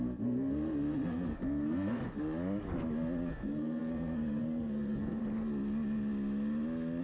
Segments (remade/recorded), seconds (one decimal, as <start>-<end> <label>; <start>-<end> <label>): 0.0-2.0 remade; 2.0-3.3 recorded; 3.3-5.2 remade; 5.2-7.0 recorded